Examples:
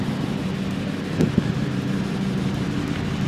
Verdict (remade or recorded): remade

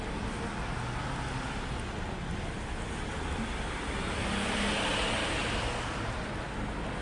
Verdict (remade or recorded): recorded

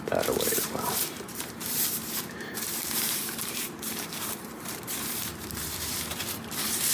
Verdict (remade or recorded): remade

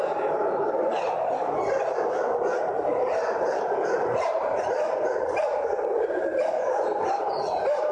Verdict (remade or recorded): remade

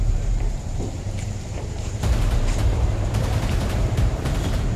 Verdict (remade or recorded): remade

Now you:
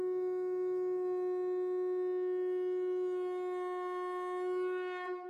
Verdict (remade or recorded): recorded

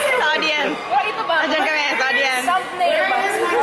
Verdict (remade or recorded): recorded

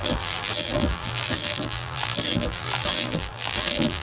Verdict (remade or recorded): remade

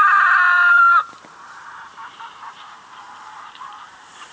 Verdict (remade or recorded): remade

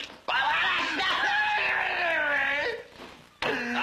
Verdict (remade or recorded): recorded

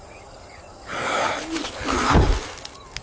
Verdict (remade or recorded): recorded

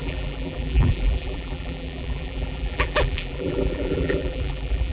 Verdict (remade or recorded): remade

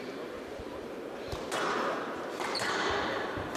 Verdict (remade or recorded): remade